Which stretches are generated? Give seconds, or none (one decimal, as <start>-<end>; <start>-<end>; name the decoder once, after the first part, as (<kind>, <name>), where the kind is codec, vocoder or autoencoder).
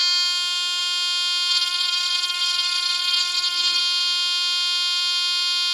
1.5-3.8 (vocoder, BigVGAN v2)